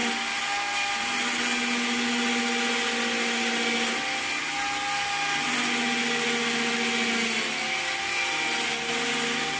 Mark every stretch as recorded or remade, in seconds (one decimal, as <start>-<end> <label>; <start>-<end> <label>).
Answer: 0.0-9.6 recorded